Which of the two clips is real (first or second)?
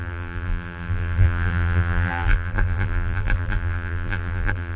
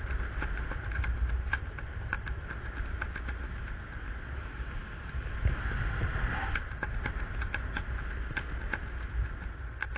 second